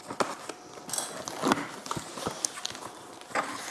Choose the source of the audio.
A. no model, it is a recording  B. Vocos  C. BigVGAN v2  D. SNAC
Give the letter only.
A